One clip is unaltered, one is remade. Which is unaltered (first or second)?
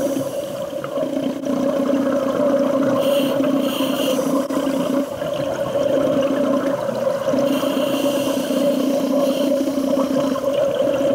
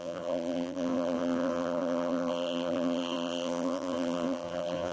first